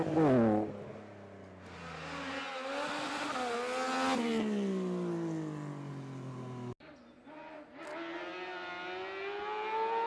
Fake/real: real